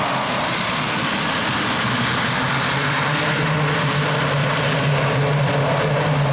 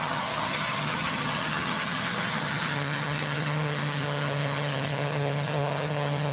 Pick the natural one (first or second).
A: first